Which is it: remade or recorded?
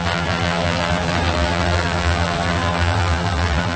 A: remade